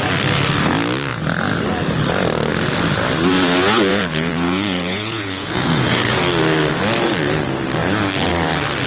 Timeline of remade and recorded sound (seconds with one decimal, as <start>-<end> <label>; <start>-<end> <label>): 0.0-3.9 recorded; 3.9-6.2 remade; 6.2-8.9 recorded